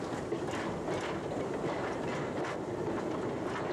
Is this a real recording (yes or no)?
yes